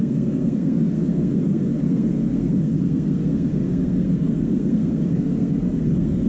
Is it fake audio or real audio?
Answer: fake